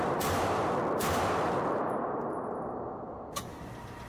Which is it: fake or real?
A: fake